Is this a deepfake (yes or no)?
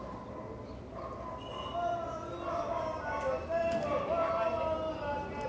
no